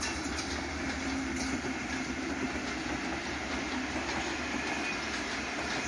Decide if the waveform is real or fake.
real